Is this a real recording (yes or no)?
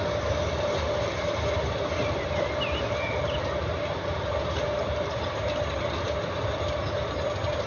yes